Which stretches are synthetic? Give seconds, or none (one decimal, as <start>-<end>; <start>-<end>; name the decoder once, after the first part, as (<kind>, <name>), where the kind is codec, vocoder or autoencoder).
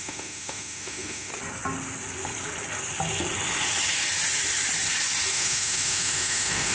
0.0-1.3 (autoencoder, DAC-VAE); 5.3-6.7